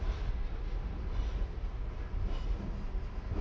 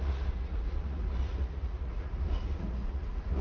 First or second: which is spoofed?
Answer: second